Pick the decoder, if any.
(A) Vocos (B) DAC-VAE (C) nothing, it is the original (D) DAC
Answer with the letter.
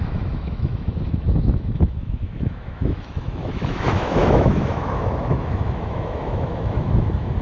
B